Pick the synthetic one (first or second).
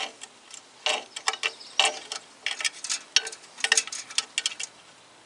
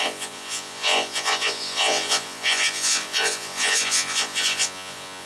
second